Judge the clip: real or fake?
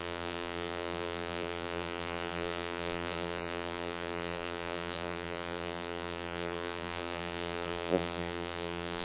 fake